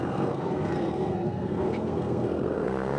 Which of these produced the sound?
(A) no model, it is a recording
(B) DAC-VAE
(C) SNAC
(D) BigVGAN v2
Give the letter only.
C